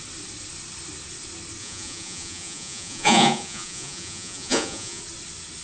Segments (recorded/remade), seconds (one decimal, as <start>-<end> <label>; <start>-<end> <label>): 0.0-1.6 recorded; 1.6-5.0 remade; 5.0-5.6 recorded

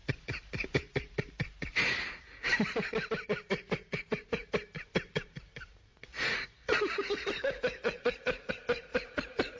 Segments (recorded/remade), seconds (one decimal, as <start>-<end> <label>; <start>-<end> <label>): 0.0-5.9 recorded; 5.9-8.5 remade; 8.5-8.9 recorded; 8.9-9.6 remade

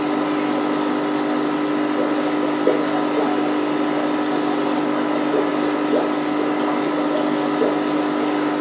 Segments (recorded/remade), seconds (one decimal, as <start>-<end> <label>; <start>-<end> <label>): 0.0-8.6 recorded

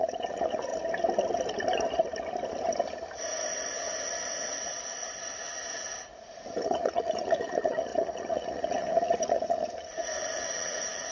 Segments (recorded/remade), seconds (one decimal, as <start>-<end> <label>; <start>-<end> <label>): 0.0-0.7 remade; 0.7-5.8 recorded; 5.8-11.1 remade

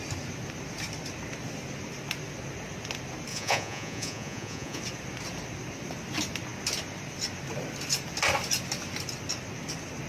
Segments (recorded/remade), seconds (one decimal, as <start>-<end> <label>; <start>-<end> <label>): 0.0-3.3 recorded; 3.3-4.8 remade; 4.8-10.1 recorded

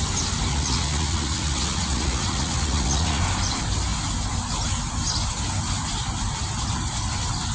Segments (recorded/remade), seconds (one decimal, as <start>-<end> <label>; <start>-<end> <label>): 0.0-0.5 recorded; 0.5-3.2 remade; 3.2-7.5 recorded